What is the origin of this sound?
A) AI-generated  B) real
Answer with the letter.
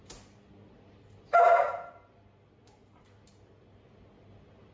B